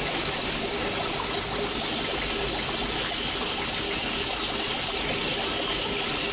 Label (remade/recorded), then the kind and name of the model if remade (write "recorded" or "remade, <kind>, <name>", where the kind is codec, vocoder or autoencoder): recorded